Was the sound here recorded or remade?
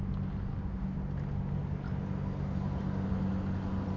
recorded